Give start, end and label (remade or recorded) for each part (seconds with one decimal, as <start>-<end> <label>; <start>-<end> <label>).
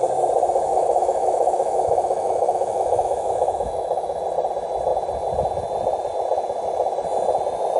0.0-0.7 recorded; 0.7-4.2 remade; 4.2-7.8 recorded